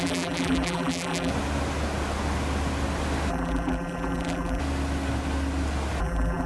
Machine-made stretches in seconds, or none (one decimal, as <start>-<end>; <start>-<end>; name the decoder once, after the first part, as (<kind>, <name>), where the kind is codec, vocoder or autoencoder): 0.0-1.3 (vocoder, BigVGAN v2); 3.3-4.6; 6.0-6.5